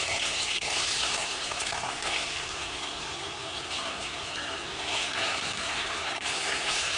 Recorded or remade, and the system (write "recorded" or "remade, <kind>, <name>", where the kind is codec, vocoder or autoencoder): remade, codec, SNAC